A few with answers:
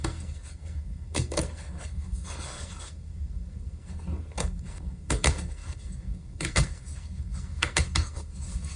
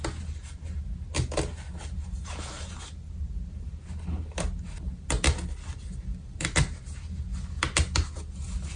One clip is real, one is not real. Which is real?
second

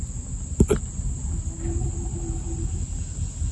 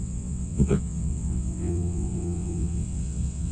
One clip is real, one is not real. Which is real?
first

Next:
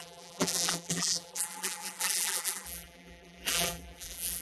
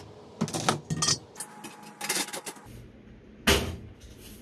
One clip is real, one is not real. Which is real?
second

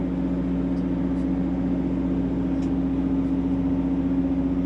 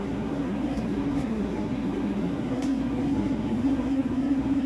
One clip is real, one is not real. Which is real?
first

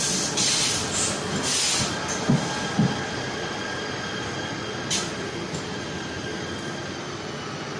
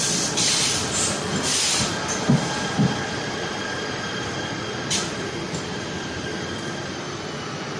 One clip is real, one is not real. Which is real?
first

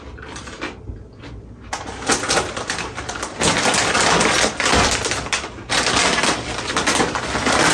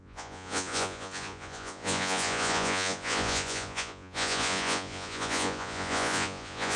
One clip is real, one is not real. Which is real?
first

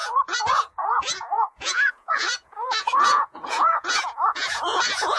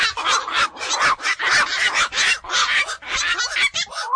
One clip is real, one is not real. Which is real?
second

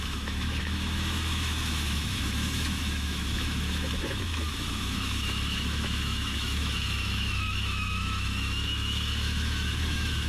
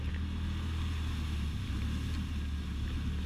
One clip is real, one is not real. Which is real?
second